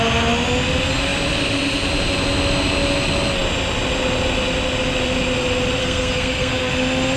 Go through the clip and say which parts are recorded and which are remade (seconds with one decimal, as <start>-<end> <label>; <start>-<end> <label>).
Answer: 0.0-5.8 recorded; 5.8-6.7 remade; 6.7-7.2 recorded